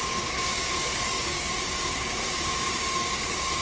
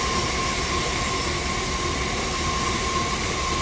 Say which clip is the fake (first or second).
first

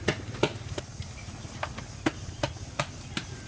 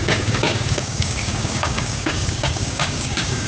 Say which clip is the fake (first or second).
second